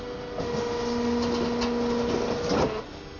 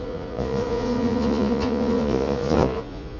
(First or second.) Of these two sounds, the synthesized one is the second